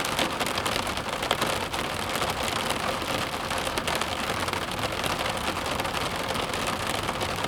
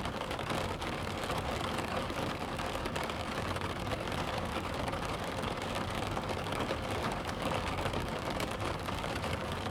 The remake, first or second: second